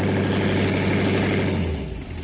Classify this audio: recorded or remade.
recorded